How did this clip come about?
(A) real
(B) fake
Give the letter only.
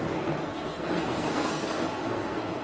B